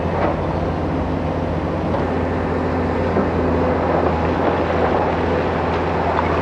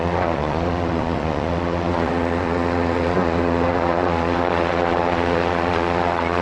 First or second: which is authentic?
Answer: first